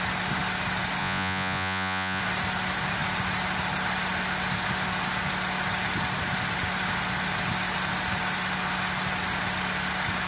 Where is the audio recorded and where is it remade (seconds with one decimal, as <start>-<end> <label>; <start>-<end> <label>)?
0.0-1.0 recorded; 1.0-2.2 remade; 2.2-10.3 recorded